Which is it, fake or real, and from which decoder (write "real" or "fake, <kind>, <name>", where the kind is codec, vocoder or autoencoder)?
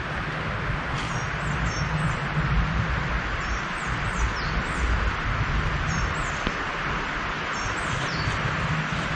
real